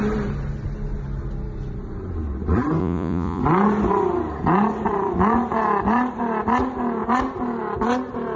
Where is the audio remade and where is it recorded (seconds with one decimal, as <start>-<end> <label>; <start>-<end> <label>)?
0.0-2.8 recorded; 2.8-3.4 remade; 3.4-8.4 recorded